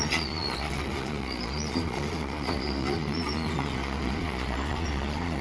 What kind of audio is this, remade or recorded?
remade